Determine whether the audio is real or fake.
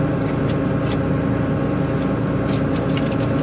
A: real